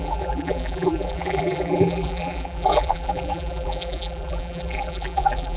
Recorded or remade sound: remade